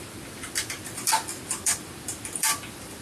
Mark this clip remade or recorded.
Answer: remade